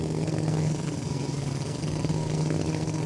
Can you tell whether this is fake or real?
fake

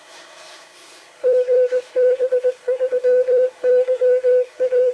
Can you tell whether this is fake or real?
fake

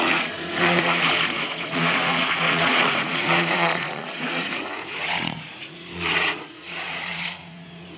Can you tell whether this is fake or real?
fake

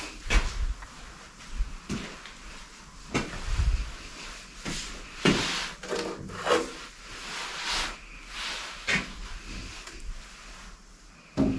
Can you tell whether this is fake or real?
real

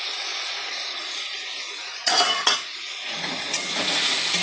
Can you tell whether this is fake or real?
fake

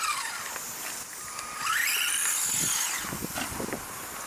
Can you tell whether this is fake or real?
real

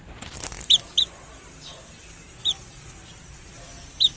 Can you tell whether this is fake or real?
real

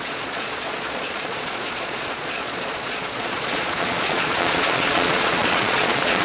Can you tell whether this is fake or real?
fake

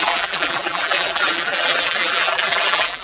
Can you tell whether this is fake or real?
fake